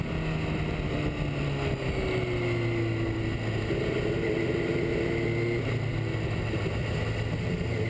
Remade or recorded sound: recorded